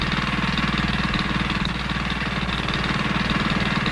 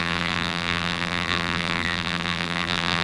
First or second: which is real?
first